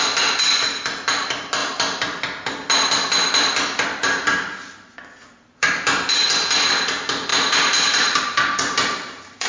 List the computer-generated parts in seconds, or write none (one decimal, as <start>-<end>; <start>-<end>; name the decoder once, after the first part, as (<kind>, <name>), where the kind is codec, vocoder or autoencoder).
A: 7.3-9.5 (vocoder, BigVGAN v2)